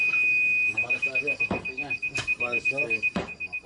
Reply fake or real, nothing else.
fake